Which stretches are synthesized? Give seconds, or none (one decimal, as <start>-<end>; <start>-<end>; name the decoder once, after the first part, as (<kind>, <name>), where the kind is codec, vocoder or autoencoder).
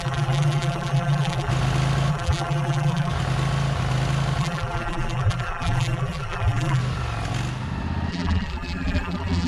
0.0-1.5 (vocoder, BigVGAN v2); 2.1-3.1; 4.4-6.8; 8.1-9.5